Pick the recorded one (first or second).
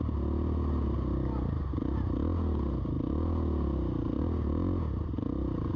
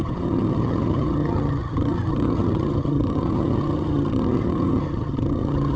first